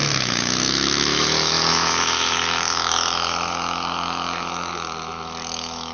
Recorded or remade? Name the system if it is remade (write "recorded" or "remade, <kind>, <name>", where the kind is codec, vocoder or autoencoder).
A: remade, autoencoder, DAC-VAE